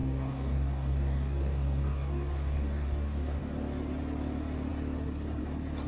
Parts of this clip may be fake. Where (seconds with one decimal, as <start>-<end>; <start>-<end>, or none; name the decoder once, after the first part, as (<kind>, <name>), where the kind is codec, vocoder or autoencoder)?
0.0-3.4 (codec, DAC)